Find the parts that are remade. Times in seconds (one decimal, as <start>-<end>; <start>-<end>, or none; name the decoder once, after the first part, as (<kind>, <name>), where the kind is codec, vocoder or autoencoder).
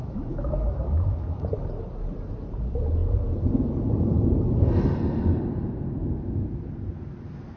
0.0-1.4 (autoencoder, DAC-VAE)